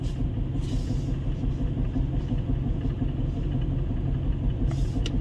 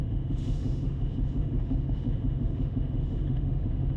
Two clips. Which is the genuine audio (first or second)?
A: first